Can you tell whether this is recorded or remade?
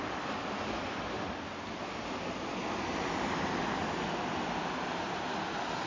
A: recorded